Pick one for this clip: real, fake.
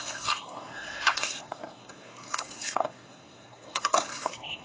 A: fake